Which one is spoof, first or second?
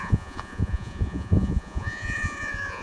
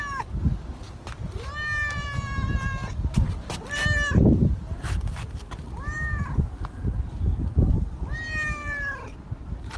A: first